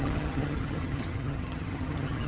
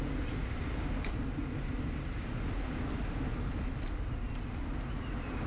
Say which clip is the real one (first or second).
second